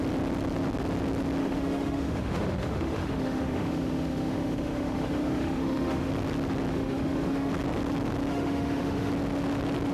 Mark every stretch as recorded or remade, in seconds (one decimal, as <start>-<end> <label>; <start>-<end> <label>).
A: 0.0-1.4 recorded; 1.4-6.1 remade; 6.1-6.7 recorded; 6.7-7.5 remade; 7.5-8.3 recorded; 8.3-9.1 remade; 9.1-9.9 recorded

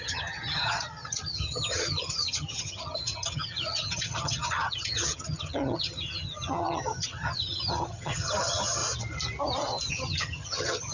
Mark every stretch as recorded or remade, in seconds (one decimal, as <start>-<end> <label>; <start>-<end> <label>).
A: 0.0-8.8 remade; 8.8-9.9 recorded; 9.9-10.9 remade

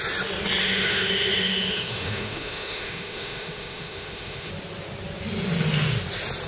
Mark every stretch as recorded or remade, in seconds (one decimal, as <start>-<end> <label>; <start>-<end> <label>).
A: 0.0-0.6 recorded; 0.6-4.5 remade; 4.5-6.5 recorded

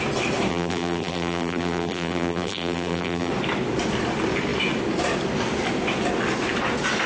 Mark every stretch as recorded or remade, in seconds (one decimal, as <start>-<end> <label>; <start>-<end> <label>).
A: 0.0-0.5 recorded; 0.5-3.3 remade; 3.3-7.1 recorded

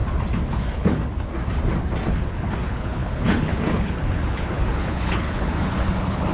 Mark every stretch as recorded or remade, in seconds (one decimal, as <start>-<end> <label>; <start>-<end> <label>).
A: 0.0-0.5 recorded; 0.5-1.3 remade; 1.3-2.1 recorded; 2.1-6.3 remade

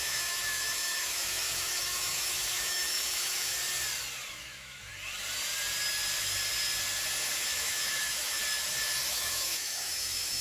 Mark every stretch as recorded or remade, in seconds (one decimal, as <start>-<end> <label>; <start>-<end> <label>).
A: 0.0-3.5 remade; 3.5-4.4 recorded; 4.4-4.9 remade; 4.9-7.4 recorded; 7.4-8.4 remade; 8.4-9.1 recorded; 9.1-10.4 remade

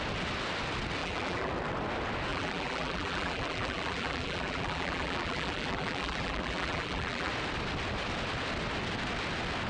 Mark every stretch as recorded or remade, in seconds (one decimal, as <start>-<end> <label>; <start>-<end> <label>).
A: 0.0-1.0 recorded; 1.0-1.5 remade; 1.5-2.3 recorded; 2.3-7.3 remade; 7.3-9.7 recorded